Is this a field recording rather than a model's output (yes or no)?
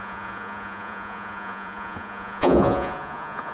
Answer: no